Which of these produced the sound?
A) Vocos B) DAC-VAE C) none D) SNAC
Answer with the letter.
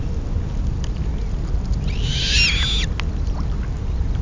C